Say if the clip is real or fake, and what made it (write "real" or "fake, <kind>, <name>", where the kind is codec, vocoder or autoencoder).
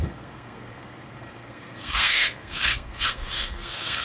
fake, codec, SNAC